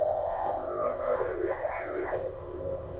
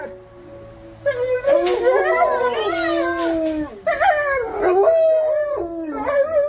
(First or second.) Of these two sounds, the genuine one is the second